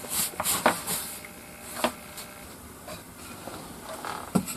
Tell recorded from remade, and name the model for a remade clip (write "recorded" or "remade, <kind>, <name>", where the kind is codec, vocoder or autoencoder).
recorded